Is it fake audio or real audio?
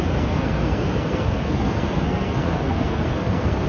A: fake